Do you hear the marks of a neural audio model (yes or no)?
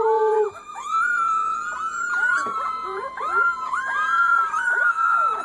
yes